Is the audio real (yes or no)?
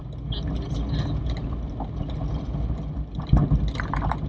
yes